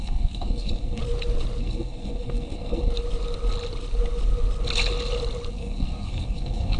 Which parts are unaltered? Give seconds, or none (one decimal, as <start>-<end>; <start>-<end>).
1.0-1.6; 2.9-5.5